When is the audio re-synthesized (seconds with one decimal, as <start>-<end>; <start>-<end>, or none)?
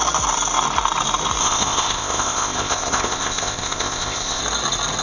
1.4-4.4